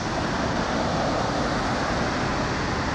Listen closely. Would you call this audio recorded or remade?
recorded